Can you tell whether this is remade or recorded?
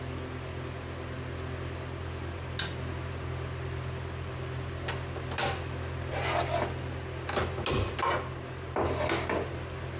recorded